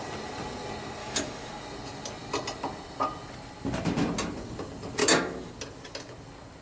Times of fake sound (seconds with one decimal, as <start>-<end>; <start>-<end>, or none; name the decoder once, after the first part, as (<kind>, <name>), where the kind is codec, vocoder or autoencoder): 1.0-1.5 (autoencoder, DAC-VAE); 5.0-5.5